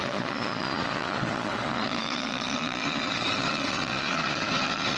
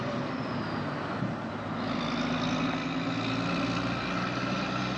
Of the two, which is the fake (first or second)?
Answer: first